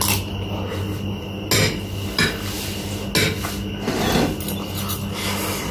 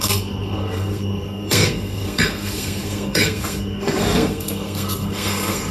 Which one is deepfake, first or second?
second